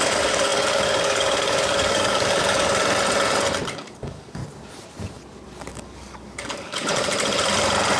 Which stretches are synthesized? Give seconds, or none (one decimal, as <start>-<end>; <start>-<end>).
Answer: 0.0-2.8; 3.7-4.4; 5.7-6.9